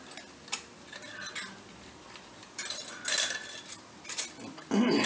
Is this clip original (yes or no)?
yes